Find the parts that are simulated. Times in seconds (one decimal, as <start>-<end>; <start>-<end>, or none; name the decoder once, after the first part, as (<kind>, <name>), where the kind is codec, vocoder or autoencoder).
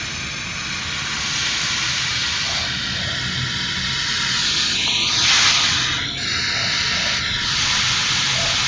none